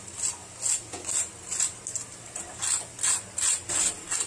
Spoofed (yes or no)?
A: no